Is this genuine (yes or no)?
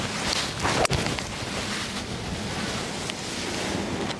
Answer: yes